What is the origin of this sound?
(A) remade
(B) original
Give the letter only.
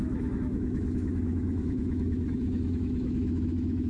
A